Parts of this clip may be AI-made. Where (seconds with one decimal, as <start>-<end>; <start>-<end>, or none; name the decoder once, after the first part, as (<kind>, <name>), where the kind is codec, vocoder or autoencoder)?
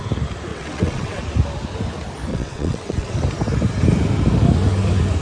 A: 0.5-1.2 (vocoder, WaveNeXt); 2.3-3.1